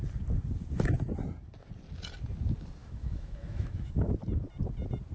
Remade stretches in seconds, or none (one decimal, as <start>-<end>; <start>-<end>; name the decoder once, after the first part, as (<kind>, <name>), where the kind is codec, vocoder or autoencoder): 2.8-4.1 (autoencoder, DAC-VAE)